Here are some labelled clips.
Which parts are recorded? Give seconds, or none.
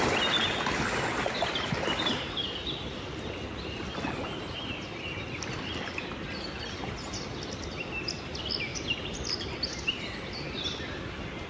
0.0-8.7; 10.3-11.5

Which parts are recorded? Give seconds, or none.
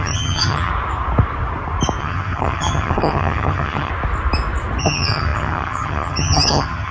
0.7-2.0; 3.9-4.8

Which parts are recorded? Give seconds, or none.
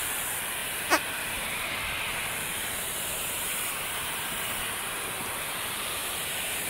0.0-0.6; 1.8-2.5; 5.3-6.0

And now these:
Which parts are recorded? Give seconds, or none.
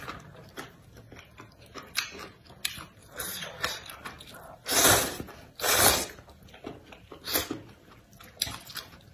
0.0-3.0; 5.8-9.1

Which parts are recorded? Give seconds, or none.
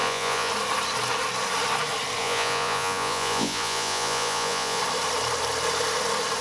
0.5-2.2; 4.8-6.4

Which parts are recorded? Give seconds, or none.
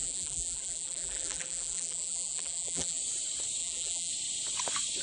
3.0-3.6; 4.1-5.0